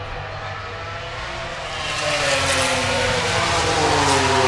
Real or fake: real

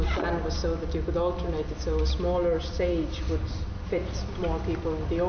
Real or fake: real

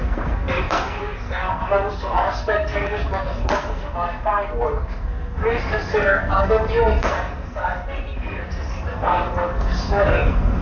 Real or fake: fake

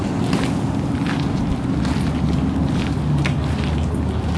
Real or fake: real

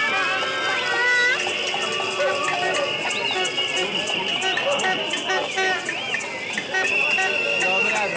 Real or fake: real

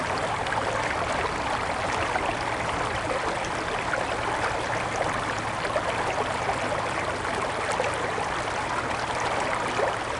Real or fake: real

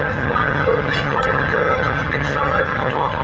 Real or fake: fake